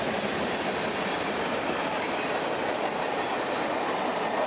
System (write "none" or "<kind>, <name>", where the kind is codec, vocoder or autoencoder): none